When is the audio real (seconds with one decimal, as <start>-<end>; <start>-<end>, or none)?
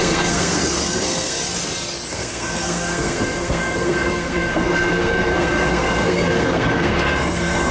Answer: 1.4-2.1